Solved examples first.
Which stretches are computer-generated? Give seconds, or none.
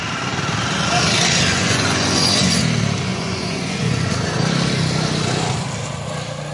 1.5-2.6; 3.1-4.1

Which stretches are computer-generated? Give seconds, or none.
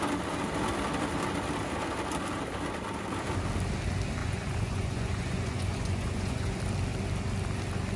4.2-6.6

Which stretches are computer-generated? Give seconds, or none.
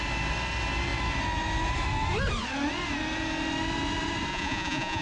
4.3-5.0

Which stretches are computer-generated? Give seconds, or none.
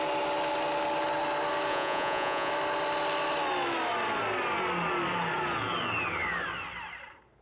1.7-2.5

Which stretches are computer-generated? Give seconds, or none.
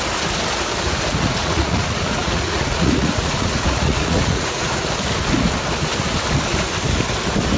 1.1-4.8